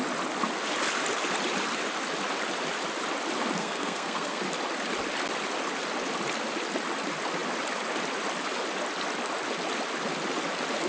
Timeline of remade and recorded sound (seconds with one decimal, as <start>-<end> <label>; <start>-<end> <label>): 0.0-3.6 recorded; 3.6-4.4 remade; 4.4-10.9 recorded

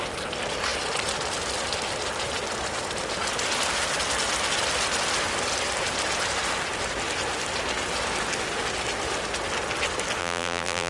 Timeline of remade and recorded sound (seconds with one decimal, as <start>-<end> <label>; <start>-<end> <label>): 0.0-10.2 recorded; 10.2-10.9 remade

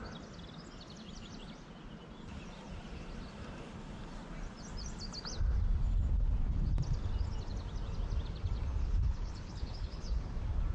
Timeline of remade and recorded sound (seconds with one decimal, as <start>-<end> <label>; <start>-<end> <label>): 0.0-8.8 recorded; 8.8-10.2 remade; 10.2-10.7 recorded